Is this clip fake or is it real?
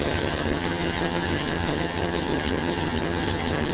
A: fake